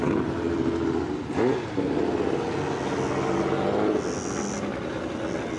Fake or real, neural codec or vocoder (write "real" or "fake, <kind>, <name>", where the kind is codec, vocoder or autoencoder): real